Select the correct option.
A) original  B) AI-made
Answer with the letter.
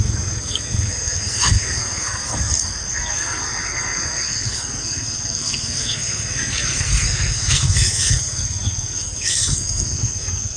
B